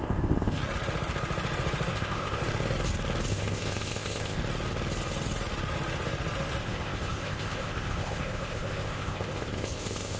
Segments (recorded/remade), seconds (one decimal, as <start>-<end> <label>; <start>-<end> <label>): 0.0-0.6 remade; 0.6-1.9 recorded; 1.9-2.4 remade; 2.4-3.3 recorded; 3.3-4.4 remade; 4.4-6.6 recorded; 6.6-10.2 remade